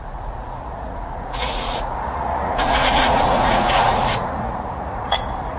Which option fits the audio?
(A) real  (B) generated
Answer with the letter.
B